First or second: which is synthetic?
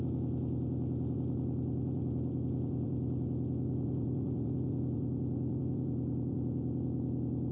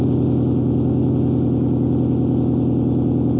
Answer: first